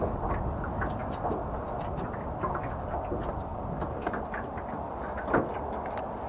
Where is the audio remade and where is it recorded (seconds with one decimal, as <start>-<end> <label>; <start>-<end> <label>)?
0.0-6.3 recorded